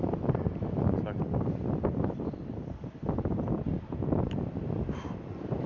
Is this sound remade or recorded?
remade